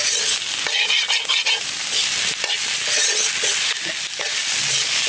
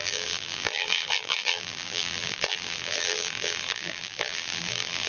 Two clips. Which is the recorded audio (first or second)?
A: first